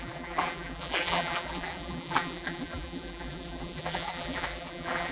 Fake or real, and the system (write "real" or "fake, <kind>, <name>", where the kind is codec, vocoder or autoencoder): fake, vocoder, BigVGAN v2